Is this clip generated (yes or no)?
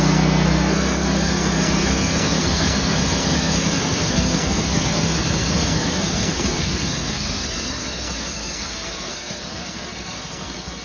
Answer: yes